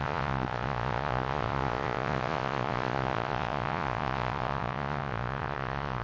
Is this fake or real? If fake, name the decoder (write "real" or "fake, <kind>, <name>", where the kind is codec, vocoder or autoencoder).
fake, vocoder, Vocos